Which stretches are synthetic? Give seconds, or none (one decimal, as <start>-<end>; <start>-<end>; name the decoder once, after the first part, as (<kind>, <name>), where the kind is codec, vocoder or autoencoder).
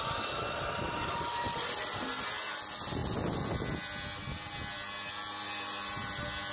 none